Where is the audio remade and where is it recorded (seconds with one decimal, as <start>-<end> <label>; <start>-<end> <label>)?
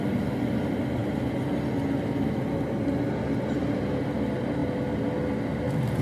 0.0-6.0 recorded